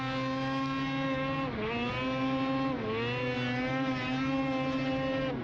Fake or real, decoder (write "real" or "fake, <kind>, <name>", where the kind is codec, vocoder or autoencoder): real